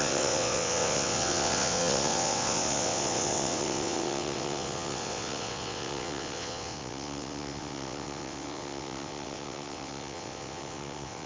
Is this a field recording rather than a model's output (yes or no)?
no